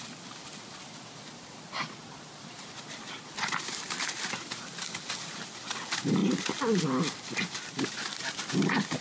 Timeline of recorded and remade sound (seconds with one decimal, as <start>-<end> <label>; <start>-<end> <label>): 0.0-9.0 recorded